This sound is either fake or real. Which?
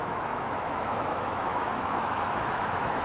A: fake